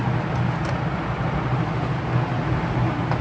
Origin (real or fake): real